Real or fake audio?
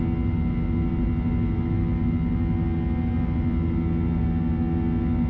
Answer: real